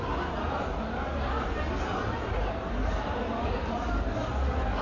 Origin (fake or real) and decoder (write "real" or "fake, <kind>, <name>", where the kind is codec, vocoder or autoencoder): real